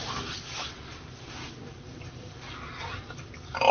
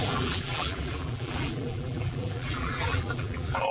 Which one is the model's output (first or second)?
second